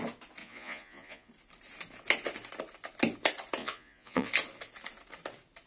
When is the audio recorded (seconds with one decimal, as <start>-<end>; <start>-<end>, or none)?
0.0-0.4; 1.3-3.6; 4.3-5.7